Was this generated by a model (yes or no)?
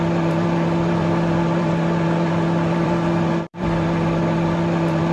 yes